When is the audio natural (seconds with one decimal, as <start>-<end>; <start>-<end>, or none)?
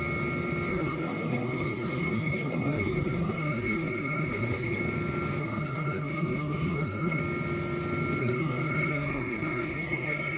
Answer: 0.0-0.7; 4.8-5.4; 7.2-8.2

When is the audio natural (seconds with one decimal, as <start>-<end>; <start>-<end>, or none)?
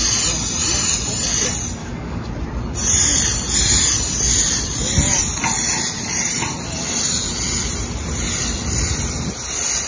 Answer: 0.0-1.8; 2.3-9.9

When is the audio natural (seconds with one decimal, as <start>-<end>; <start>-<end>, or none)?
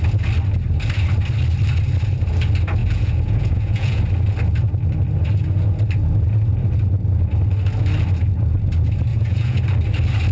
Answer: 0.0-2.8; 4.0-9.1; 9.6-10.3